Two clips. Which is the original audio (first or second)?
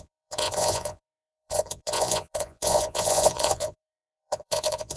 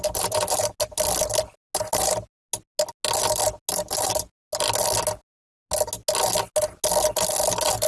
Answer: second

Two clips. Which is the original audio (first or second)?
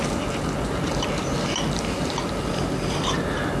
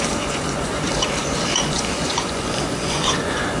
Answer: first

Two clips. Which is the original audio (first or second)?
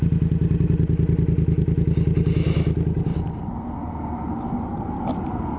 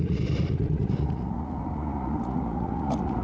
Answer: first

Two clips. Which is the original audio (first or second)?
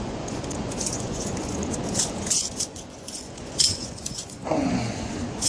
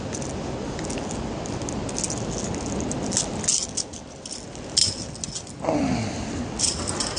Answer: second